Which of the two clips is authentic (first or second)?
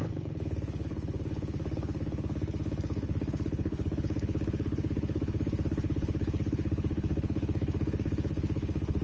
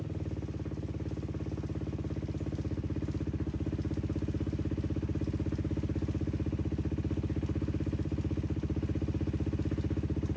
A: second